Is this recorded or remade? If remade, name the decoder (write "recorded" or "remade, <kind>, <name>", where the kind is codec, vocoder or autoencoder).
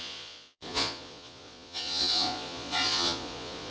remade, vocoder, Vocos